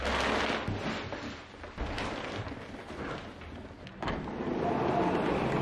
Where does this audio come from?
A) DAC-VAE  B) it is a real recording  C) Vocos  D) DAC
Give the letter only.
B